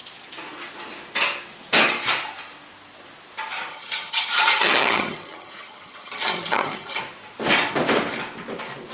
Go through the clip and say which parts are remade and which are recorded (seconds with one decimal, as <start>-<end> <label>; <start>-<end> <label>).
0.0-3.7 recorded; 3.7-7.0 remade; 7.0-8.9 recorded